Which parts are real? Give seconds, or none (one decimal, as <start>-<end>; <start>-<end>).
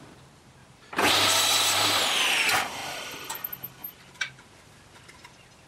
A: 0.0-0.6; 2.0-3.8; 4.5-5.7